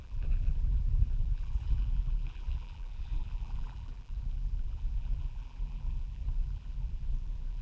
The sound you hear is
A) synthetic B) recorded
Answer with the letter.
A